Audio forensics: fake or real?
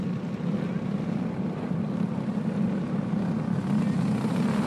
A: real